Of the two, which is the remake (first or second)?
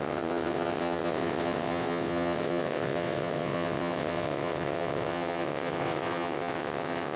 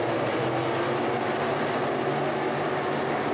first